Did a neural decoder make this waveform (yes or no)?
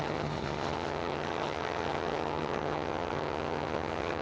yes